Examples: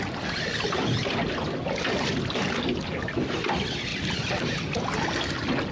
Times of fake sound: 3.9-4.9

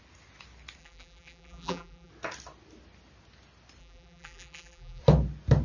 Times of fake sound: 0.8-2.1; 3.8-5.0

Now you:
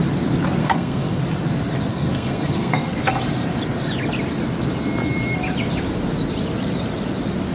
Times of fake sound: 0.6-1.2; 1.9-3.0

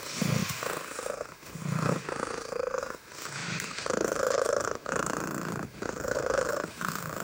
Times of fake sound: 0.0-7.2